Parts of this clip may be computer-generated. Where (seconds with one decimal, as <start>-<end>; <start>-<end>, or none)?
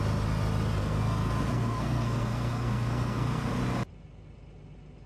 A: 0.8-3.5